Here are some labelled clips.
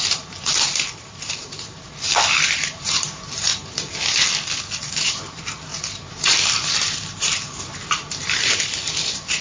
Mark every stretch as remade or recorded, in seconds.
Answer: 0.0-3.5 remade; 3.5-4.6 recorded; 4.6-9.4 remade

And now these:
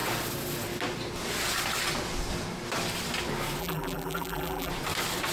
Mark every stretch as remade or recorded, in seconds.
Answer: 0.0-3.6 recorded; 3.6-4.7 remade; 4.7-5.3 recorded

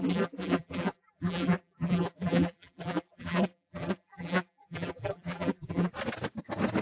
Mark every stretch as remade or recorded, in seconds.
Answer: 0.0-5.9 remade; 5.9-6.8 recorded

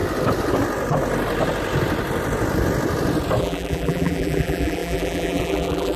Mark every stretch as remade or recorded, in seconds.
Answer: 0.0-3.4 recorded; 3.4-6.0 remade

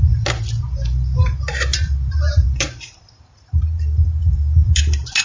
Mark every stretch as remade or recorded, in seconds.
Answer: 0.0-5.2 remade

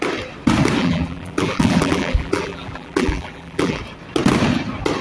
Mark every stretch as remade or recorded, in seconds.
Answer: 0.0-0.8 recorded; 0.8-3.8 remade; 3.8-5.0 recorded

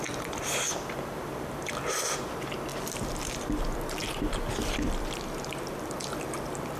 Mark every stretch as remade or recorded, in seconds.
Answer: 0.0-6.8 remade